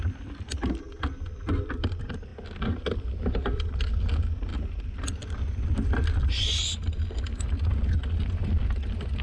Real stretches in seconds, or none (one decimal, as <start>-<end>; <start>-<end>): 0.0-9.2